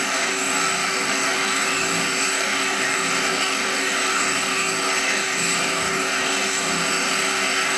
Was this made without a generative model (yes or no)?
no